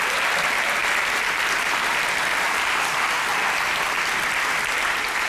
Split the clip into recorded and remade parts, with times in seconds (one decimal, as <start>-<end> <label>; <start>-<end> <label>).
0.0-5.3 recorded